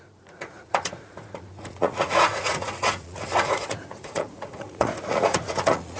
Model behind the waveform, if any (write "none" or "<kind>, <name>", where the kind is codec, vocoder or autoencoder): vocoder, Vocos